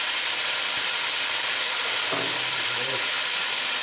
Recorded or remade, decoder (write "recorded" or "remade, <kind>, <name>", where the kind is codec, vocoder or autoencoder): recorded